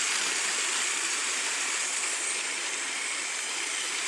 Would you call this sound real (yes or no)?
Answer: no